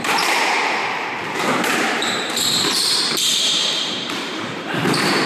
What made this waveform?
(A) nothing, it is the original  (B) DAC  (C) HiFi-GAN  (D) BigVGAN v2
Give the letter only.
D